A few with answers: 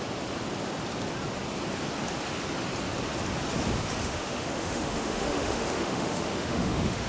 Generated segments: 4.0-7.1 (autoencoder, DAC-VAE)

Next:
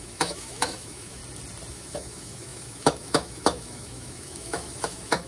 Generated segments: 0.0-1.2 (autoencoder, DAC-VAE); 1.7-5.3

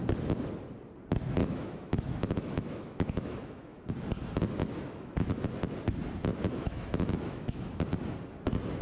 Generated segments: 1.4-3.9 (autoencoder, DAC-VAE); 4.6-5.3; 6.3-7.8